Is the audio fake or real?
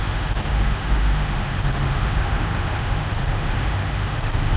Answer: fake